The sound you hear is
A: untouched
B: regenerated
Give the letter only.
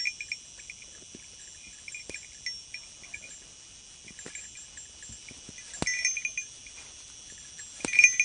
A